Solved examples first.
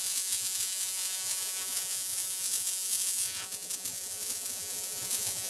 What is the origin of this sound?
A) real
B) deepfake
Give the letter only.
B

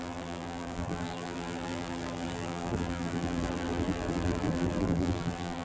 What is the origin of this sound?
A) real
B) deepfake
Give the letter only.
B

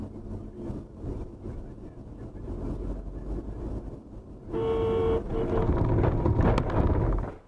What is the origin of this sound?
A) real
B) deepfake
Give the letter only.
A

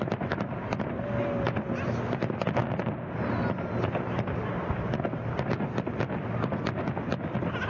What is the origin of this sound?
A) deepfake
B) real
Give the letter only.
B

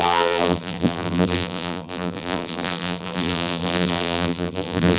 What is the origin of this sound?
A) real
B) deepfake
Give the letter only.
B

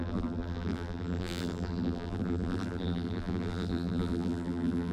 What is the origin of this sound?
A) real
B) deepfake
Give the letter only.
B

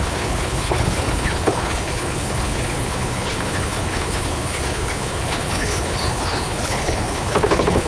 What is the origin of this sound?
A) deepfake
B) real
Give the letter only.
A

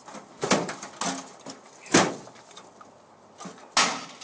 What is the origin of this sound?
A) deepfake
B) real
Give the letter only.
B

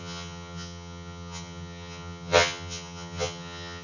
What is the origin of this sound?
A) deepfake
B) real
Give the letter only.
A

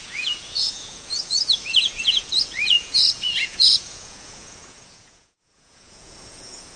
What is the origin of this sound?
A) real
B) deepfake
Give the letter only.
B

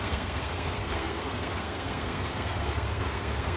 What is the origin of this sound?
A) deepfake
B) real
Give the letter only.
A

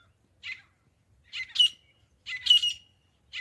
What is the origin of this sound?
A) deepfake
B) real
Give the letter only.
B